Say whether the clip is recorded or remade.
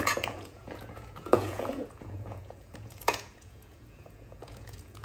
remade